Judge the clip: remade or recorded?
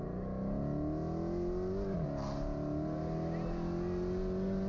recorded